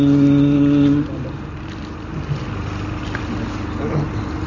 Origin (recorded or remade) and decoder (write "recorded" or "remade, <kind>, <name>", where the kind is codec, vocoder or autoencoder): recorded